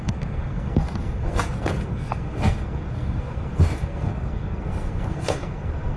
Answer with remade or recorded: remade